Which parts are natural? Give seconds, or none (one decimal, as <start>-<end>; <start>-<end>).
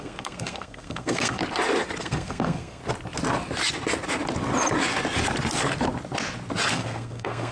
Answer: 1.4-2.0; 2.8-6.7